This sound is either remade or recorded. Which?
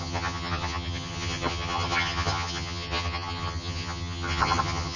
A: remade